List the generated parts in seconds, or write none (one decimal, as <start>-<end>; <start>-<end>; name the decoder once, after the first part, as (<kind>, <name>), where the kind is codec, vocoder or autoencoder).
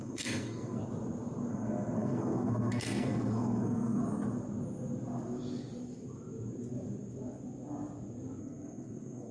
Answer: 0.0-0.8 (codec, SNAC); 1.5-4.0; 8.4-9.3